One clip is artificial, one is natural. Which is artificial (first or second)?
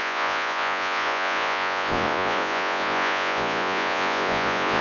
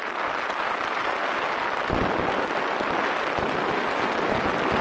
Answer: first